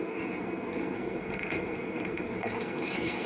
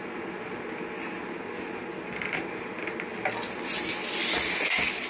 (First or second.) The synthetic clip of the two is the first